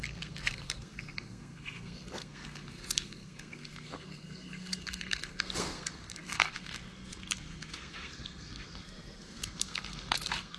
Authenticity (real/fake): fake